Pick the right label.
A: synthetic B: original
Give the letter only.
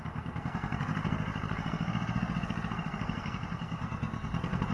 A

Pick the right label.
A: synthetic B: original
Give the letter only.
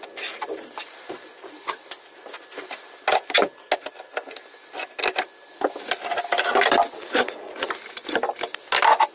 B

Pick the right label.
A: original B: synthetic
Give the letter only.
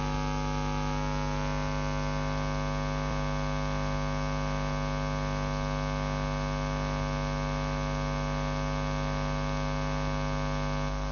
A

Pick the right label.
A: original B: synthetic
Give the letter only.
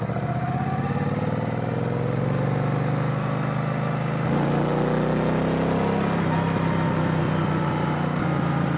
A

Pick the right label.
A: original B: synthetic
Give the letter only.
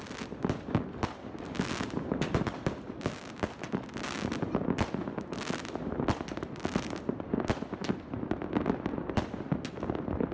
A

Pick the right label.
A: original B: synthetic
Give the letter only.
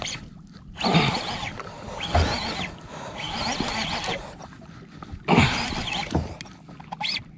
A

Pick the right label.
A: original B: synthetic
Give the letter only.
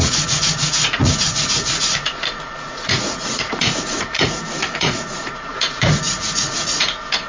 B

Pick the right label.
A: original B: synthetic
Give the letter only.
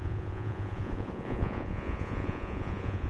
B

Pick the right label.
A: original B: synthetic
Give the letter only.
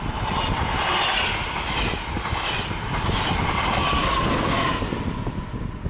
A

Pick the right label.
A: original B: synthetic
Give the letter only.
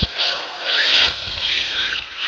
B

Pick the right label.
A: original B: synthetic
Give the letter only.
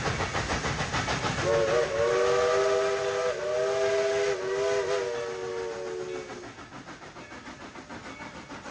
A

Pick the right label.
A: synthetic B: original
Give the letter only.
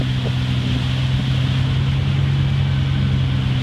B